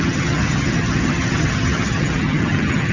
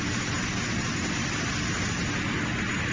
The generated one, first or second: first